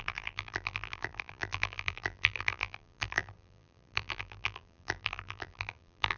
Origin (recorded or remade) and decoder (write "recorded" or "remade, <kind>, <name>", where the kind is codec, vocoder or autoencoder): remade, vocoder, BigVGAN v2